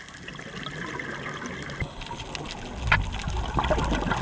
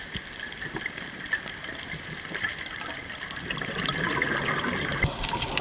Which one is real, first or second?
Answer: first